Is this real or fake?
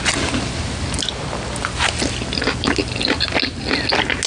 real